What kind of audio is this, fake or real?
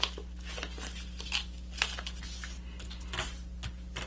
real